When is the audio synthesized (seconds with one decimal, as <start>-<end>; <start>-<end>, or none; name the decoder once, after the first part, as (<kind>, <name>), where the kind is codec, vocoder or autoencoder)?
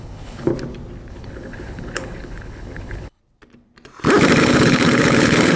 0.0-0.5 (codec, HILCodec); 1.1-3.2; 4.4-5.6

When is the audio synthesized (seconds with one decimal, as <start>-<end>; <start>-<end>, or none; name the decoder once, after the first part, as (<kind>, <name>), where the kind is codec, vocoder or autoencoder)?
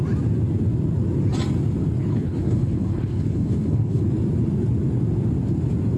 2.1-4.0 (codec, HILCodec)